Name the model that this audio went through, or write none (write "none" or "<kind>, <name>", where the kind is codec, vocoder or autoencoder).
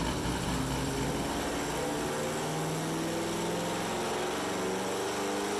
none